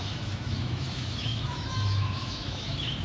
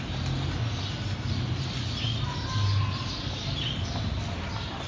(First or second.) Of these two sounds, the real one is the second